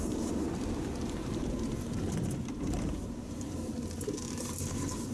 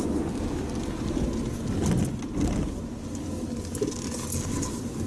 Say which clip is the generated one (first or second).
first